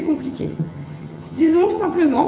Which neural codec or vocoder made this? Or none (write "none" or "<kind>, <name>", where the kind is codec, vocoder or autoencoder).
vocoder, HiFi-GAN